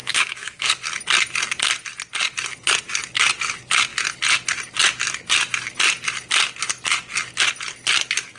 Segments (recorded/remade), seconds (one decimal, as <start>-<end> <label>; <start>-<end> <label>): 0.0-0.7 remade; 0.7-8.4 recorded